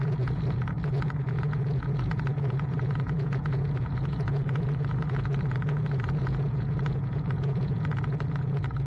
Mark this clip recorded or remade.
remade